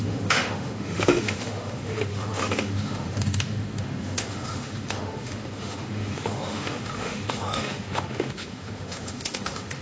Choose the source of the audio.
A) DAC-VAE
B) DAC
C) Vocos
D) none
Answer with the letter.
A